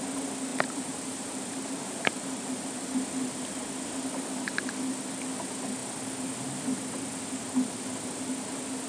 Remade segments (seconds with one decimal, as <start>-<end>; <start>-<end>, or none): 0.5-2.6